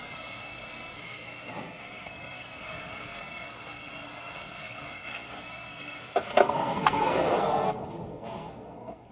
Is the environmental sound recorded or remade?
remade